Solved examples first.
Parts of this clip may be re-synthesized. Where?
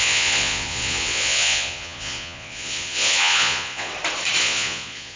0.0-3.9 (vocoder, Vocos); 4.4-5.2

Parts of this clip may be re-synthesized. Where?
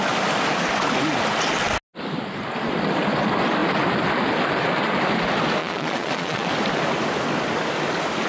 5.6-6.5 (vocoder, Vocos)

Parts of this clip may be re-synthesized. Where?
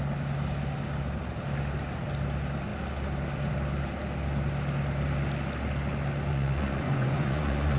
6.3-7.8 (vocoder, Vocos)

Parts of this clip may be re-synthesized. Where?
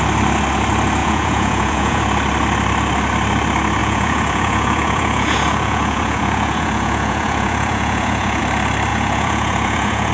1.0-2.0 (vocoder, Vocos); 3.8-8.4; 8.9-10.1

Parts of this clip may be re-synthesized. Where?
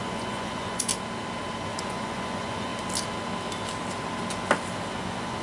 0.0-0.9 (vocoder, Vocos); 1.8-2.7; 4.9-5.4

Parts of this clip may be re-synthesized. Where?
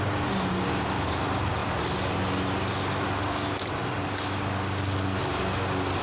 none